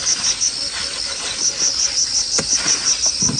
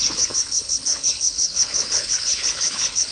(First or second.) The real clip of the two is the first